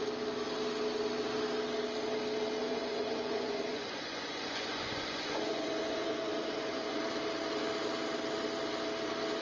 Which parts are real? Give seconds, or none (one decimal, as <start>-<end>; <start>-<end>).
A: 0.0-2.6; 7.0-9.4